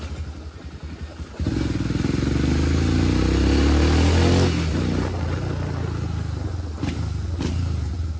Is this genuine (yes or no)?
yes